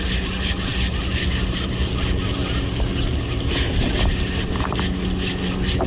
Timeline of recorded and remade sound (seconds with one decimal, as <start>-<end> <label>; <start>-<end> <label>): 0.0-5.9 recorded